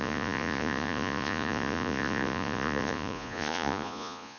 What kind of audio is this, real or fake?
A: fake